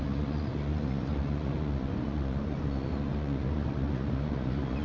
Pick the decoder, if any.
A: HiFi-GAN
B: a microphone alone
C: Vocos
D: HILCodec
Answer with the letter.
C